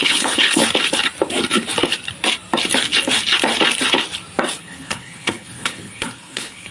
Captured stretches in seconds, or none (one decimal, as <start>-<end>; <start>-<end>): 0.6-4.6